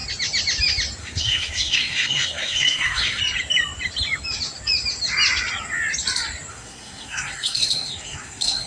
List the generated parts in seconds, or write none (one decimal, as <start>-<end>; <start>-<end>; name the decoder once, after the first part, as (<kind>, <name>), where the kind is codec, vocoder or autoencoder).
1.0-3.2 (codec, SNAC); 6.5-8.7